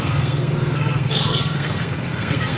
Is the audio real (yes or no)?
no